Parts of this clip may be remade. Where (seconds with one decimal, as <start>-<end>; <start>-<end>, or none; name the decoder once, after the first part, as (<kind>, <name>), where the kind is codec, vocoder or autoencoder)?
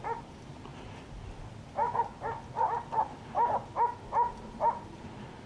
none